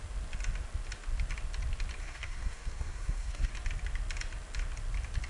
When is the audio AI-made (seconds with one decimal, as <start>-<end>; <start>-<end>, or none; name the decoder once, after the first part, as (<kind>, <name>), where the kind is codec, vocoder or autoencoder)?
2.0-3.5 (codec, SNAC)